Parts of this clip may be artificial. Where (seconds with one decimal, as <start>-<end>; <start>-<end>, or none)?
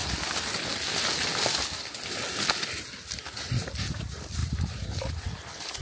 3.5-5.8